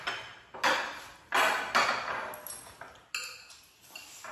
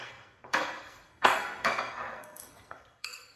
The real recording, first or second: first